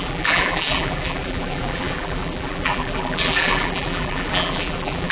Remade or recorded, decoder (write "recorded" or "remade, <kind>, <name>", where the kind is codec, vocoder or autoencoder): remade, vocoder, BigVGAN v2